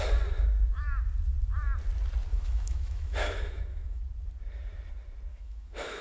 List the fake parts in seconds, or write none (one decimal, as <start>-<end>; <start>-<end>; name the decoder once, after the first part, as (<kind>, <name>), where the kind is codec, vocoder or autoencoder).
2.3-4.0 (autoencoder, DAC-VAE); 5.3-6.0